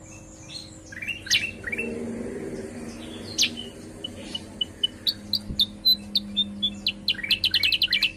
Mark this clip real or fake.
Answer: real